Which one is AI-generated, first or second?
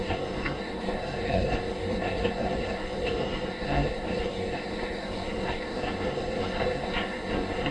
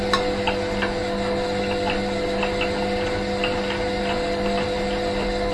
first